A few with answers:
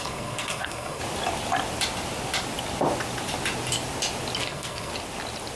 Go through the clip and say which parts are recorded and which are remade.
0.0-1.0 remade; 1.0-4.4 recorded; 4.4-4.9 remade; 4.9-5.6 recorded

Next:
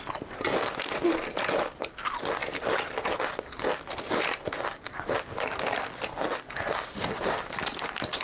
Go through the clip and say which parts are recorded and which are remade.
0.0-8.2 recorded

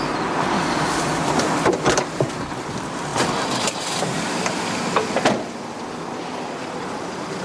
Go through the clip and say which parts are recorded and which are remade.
0.0-7.4 remade

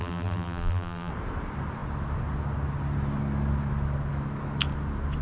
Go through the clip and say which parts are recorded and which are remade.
0.0-1.1 remade; 1.1-5.2 recorded